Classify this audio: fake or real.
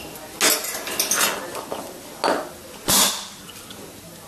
real